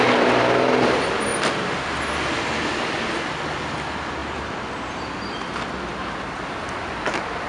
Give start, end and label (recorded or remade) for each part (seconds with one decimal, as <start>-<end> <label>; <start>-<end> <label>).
0.0-1.3 recorded; 1.3-2.0 remade; 2.0-4.2 recorded; 4.2-5.5 remade; 5.5-7.5 recorded